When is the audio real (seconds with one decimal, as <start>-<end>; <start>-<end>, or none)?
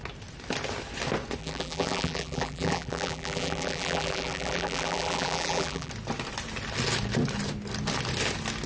0.0-1.4; 5.9-8.7